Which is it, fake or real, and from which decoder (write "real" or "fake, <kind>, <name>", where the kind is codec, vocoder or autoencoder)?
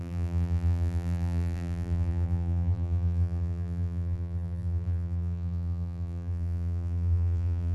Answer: fake, vocoder, BigVGAN v2